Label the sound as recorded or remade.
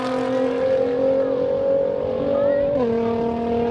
recorded